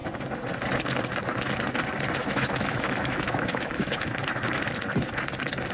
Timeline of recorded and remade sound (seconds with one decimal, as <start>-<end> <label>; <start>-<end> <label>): 0.0-2.2 recorded; 2.2-4.1 remade; 4.1-5.7 recorded